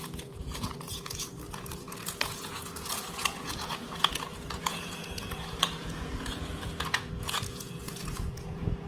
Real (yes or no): no